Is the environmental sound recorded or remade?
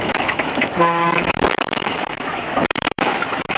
remade